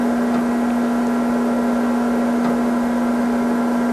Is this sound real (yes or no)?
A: yes